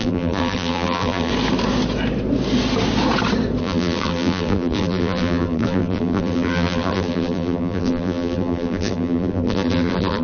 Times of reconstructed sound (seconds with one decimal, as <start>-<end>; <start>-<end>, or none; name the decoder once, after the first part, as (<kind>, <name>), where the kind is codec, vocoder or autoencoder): 0.0-1.3 (vocoder, BigVGAN v2); 3.6-10.2